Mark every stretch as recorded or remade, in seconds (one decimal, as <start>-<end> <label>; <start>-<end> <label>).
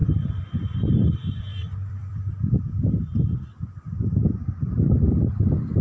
0.0-3.5 remade; 3.5-5.8 recorded